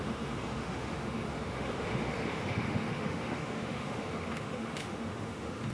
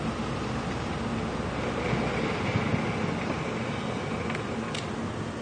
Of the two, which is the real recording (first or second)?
second